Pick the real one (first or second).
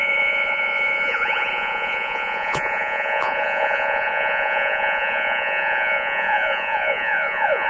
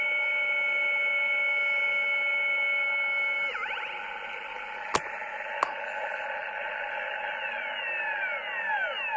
second